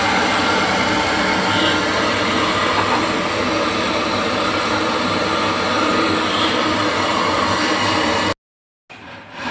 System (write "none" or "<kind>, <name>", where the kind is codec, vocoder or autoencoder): none